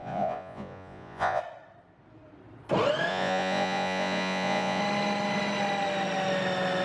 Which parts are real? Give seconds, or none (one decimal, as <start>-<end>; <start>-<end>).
1.4-3.1; 4.8-6.8